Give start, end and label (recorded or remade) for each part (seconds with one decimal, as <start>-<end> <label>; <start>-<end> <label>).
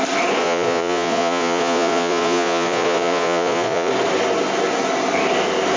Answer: 0.0-0.4 recorded; 0.4-3.9 remade; 3.9-5.8 recorded